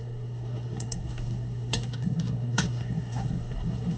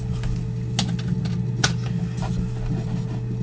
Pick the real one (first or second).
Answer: second